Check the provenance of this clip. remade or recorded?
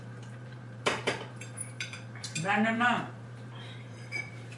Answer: remade